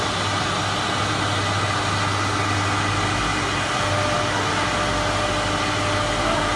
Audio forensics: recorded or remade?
recorded